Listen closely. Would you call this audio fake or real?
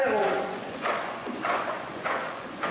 fake